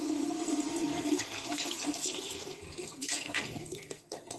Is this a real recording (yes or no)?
no